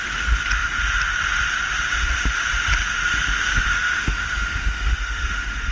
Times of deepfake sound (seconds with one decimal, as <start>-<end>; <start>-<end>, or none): 3.5-5.7